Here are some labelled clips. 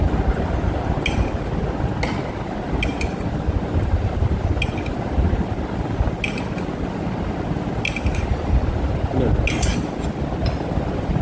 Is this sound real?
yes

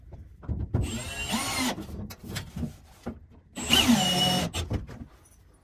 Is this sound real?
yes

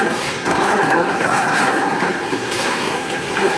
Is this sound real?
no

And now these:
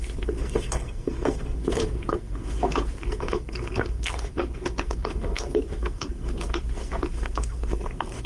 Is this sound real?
no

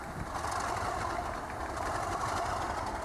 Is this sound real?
yes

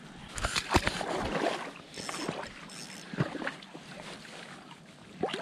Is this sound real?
yes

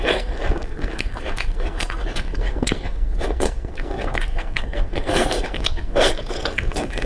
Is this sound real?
no